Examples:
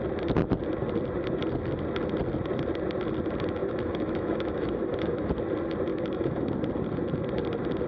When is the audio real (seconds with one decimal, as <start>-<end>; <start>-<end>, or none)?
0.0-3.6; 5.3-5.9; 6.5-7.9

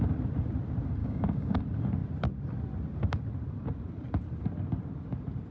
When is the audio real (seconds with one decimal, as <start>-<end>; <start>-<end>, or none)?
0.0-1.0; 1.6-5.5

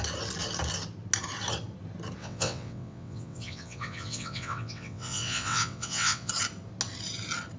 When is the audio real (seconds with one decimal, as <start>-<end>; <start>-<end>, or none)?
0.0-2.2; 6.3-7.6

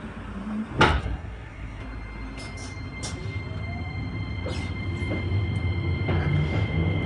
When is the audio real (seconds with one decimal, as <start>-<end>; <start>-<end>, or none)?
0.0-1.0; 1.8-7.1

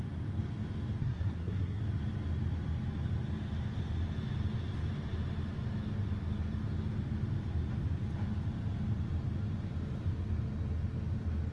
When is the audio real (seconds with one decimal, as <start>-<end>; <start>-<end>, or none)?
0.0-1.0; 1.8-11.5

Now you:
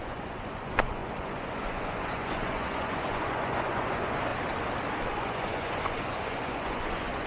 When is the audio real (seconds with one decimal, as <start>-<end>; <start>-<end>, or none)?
4.3-5.1

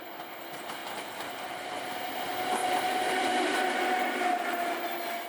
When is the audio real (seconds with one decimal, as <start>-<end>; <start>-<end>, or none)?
0.0-0.8; 1.8-2.6; 3.7-5.3